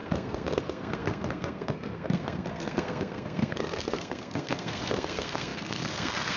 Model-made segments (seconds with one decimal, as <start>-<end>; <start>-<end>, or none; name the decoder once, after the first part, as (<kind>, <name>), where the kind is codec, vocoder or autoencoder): 0.0-6.4 (codec, SNAC)